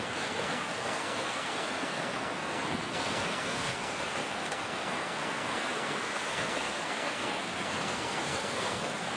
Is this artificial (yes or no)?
yes